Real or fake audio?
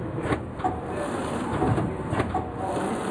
real